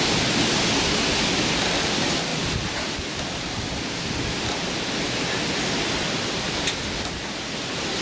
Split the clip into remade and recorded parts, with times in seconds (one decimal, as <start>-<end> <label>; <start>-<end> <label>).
0.0-8.0 recorded